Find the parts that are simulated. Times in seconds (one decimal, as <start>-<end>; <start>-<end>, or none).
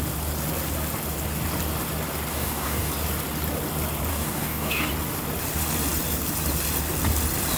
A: 2.3-2.9; 4.1-4.9